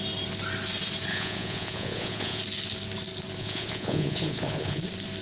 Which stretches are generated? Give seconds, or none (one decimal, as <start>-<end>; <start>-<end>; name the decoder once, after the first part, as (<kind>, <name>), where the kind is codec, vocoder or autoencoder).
1.1-2.4 (vocoder, Vocos); 3.4-4.8